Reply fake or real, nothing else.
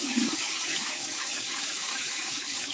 fake